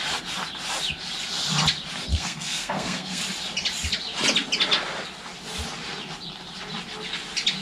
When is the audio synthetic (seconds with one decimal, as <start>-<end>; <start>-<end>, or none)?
2.1-3.2